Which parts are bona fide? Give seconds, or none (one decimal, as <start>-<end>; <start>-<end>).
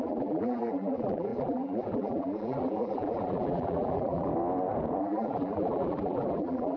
4.3-5.0